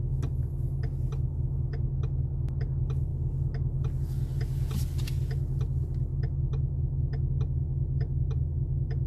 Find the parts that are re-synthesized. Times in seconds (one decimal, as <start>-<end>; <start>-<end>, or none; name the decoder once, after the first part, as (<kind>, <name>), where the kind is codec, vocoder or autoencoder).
none